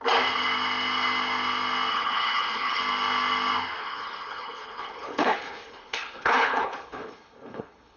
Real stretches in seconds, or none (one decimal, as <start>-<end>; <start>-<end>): 0.0-1.9; 2.8-3.8